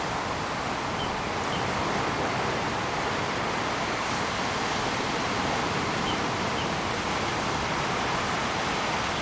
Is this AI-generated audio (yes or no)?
no